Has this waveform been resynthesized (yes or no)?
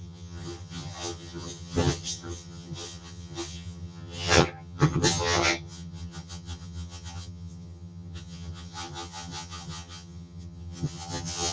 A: yes